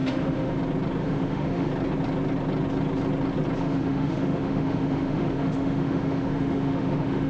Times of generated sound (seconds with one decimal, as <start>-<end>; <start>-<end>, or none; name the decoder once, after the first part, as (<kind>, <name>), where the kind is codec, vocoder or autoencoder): 0.0-0.6 (autoencoder, DAC-VAE); 1.0-1.7; 3.6-7.3